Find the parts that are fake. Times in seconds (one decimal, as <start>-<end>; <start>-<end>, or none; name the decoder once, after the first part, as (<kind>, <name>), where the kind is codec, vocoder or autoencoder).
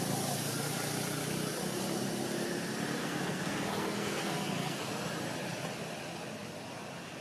3.0-4.8 (codec, SNAC)